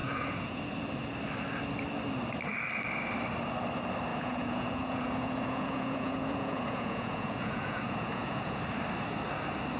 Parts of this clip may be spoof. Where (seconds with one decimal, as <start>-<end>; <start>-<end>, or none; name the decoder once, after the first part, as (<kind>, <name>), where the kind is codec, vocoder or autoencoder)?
0.0-0.6 (vocoder, Vocos); 4.1-8.6